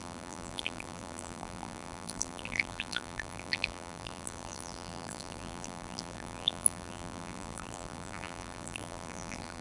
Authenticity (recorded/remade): remade